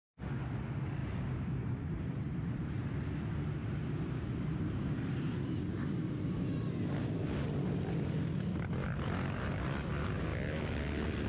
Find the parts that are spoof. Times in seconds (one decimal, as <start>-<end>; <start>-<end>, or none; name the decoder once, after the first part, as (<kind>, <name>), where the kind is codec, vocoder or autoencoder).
1.0-2.9 (vocoder, BigVGAN v2); 3.6-6.5